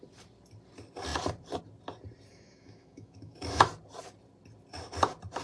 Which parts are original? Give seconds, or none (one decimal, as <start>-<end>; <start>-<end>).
0.0-2.3; 3.7-5.4